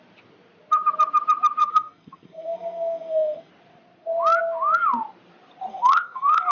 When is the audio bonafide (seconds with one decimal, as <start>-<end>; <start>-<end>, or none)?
0.0-1.6; 3.5-5.7